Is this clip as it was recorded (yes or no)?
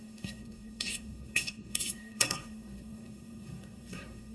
no